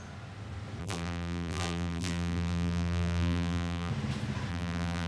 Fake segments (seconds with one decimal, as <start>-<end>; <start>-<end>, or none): 0.8-3.9; 4.5-5.1